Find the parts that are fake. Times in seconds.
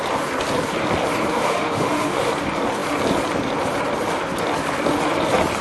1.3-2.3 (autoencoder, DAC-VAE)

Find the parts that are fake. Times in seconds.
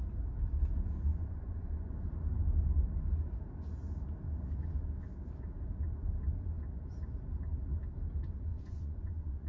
1.1-1.9 (vocoder, Vocos); 8.5-9.5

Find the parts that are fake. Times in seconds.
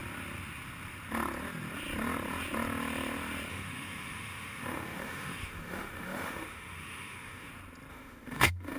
3.5-7.5 (autoencoder, DAC-VAE); 7.9-8.8